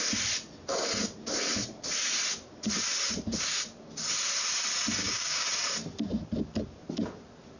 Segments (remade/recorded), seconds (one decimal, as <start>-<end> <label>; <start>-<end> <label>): 0.0-5.0 recorded; 5.0-5.5 remade; 5.5-7.6 recorded